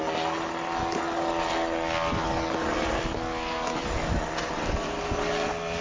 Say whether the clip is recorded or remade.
recorded